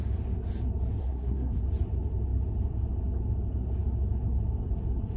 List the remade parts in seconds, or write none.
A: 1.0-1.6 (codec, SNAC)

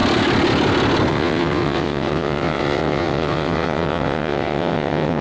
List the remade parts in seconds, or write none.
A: 1.1-5.2 (vocoder, WaveNeXt)

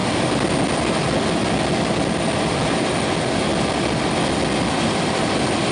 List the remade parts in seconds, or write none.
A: none

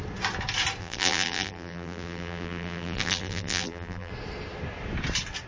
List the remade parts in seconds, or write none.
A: 0.8-4.1 (vocoder, BigVGAN v2)

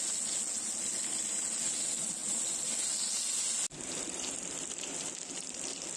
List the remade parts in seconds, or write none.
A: none

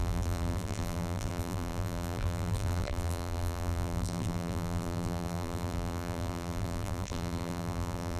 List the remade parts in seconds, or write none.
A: 0.0-8.2 (vocoder, BigVGAN v2)

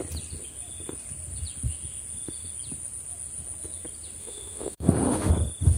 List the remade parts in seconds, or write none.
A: 4.2-5.3 (autoencoder, DAC-VAE)

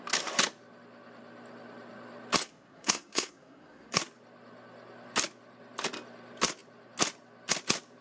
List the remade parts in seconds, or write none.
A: 2.4-4.0 (codec, SNAC)